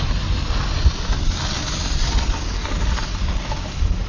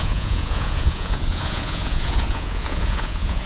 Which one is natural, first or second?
first